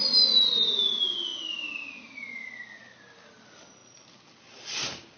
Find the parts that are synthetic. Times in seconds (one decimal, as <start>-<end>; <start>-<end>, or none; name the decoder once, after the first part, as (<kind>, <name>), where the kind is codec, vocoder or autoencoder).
none